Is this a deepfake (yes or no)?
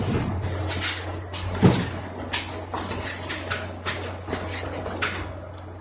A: no